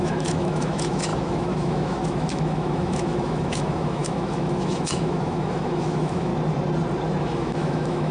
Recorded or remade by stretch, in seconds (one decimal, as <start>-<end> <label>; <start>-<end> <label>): 0.0-6.3 remade; 6.3-7.2 recorded; 7.2-8.1 remade